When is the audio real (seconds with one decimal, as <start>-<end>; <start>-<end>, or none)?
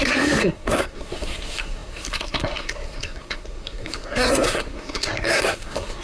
none